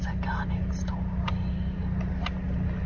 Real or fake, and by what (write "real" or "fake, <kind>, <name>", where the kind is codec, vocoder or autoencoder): real